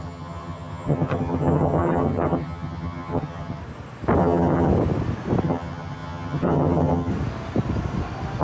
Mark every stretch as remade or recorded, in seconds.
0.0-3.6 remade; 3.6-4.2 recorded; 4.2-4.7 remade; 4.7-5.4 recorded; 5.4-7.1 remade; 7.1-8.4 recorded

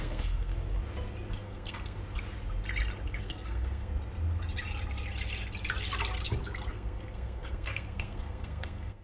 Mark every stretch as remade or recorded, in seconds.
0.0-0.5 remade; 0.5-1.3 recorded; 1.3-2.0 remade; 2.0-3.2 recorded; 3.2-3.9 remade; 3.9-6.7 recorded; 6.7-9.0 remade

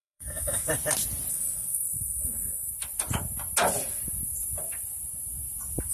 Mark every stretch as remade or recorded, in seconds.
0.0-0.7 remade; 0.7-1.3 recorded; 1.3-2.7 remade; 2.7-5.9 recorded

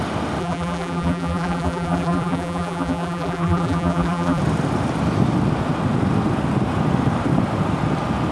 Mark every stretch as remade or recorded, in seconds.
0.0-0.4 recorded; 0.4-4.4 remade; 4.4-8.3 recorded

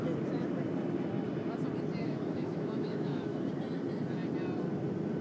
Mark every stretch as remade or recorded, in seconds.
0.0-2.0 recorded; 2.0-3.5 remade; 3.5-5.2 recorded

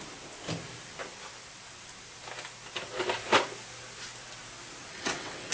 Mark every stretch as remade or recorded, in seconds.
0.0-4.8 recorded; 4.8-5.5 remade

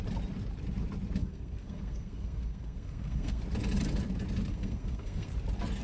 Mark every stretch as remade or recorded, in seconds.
0.0-1.2 recorded; 1.2-3.4 remade; 3.4-4.5 recorded; 4.5-5.3 remade; 5.3-5.8 recorded

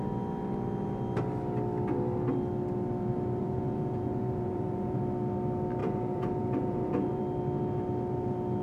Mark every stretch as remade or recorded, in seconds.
0.0-3.4 recorded; 3.4-5.0 remade; 5.0-5.8 recorded; 5.8-7.2 remade; 7.2-8.6 recorded